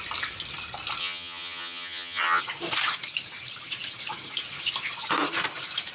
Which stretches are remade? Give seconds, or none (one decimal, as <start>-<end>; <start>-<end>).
1.0-2.4